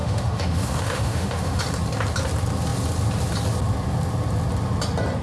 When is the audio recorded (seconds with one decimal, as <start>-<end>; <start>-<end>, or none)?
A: 1.6-5.2